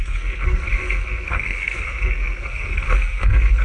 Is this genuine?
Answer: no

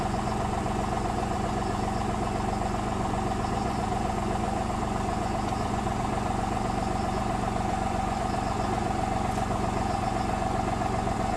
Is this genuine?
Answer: no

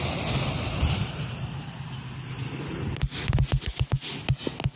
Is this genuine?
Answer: yes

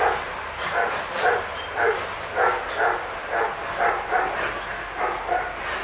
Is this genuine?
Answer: yes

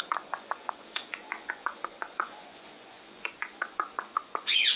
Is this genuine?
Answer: no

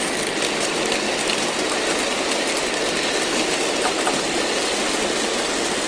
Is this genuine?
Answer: yes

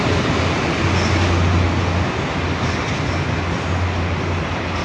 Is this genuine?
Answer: yes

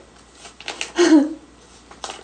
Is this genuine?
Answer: yes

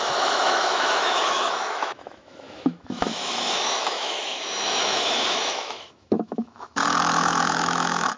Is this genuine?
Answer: no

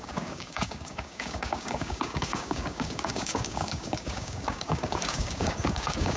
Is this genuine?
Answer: no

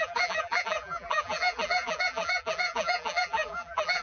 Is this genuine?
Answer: no